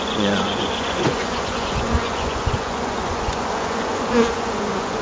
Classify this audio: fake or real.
fake